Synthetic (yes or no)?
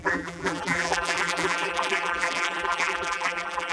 yes